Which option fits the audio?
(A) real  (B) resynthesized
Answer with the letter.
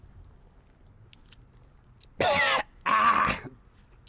A